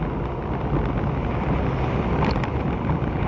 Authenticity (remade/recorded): recorded